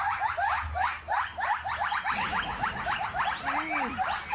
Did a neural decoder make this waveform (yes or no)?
no